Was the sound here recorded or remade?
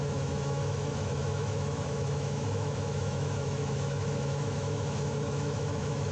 remade